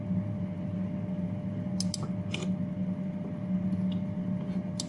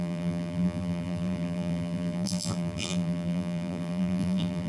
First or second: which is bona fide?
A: first